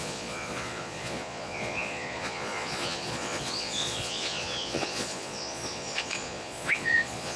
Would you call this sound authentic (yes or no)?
no